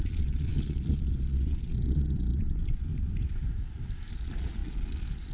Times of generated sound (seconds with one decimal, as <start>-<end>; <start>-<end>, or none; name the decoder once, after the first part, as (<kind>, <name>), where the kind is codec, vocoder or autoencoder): 0.0-2.9 (vocoder, Vocos); 4.1-5.3